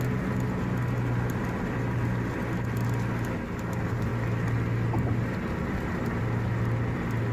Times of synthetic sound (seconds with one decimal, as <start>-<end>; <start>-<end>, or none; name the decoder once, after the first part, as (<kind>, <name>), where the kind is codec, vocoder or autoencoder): none